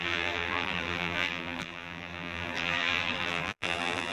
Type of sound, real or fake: fake